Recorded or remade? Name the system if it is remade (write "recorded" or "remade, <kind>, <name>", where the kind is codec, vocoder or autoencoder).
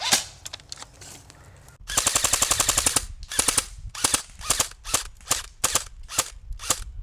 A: recorded